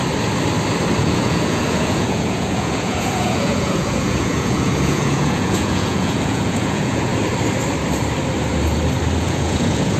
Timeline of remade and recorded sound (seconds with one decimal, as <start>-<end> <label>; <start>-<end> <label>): 0.0-1.0 recorded; 1.0-7.1 remade; 7.1-9.2 recorded; 9.2-10.0 remade